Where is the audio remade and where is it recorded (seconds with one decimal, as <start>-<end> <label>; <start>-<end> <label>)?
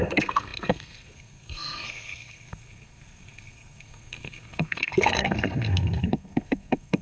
0.0-7.0 remade